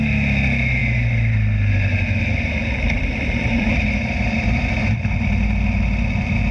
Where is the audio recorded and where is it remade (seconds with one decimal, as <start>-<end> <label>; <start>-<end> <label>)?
0.0-2.6 recorded; 2.6-4.6 remade; 4.6-6.5 recorded